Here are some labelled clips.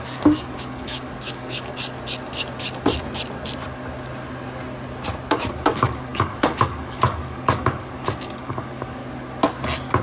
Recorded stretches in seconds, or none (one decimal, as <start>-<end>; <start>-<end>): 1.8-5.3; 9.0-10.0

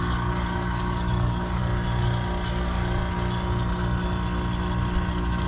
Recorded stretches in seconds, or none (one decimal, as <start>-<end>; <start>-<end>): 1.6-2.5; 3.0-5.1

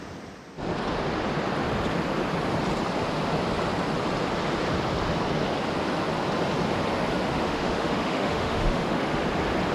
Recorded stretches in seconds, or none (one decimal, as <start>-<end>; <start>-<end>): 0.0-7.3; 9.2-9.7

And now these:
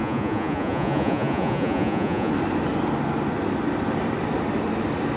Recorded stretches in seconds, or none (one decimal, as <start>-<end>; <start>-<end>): 2.3-5.2

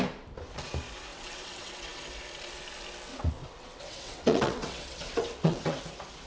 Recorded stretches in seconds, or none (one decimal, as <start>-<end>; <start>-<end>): 0.0-1.1; 2.1-3.1; 5.8-6.3

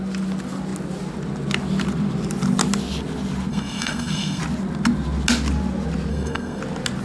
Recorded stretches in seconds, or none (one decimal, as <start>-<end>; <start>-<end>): 0.0-3.5; 4.4-6.1; 6.6-7.0